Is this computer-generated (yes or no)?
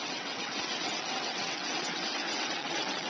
yes